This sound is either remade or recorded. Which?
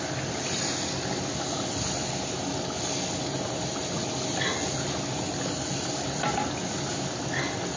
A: recorded